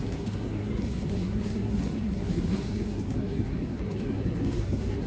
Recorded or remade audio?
remade